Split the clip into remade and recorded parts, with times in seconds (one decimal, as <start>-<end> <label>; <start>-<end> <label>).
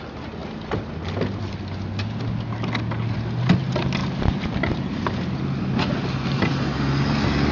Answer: 0.0-4.0 recorded; 4.0-5.2 remade; 5.2-7.5 recorded